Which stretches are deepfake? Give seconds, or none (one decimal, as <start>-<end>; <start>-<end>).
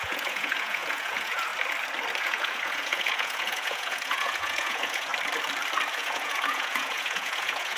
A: 0.0-1.5; 2.2-5.1; 6.0-7.8